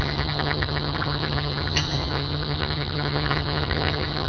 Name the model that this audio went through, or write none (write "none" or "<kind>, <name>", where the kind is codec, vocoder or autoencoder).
vocoder, HiFi-GAN